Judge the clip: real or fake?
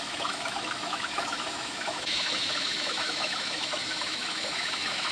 fake